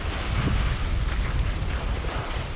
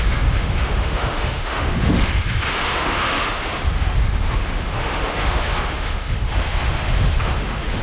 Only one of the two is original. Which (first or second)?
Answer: first